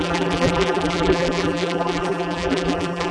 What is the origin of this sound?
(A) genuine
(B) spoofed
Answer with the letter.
B